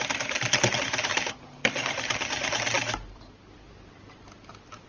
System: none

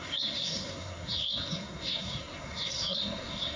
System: codec, SNAC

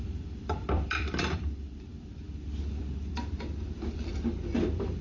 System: vocoder, BigVGAN v2